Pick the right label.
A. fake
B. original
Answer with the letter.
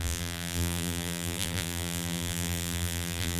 A